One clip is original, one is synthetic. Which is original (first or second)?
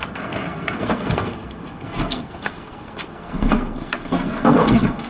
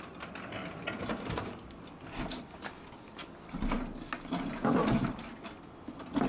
second